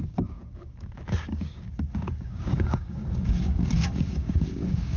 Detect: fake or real fake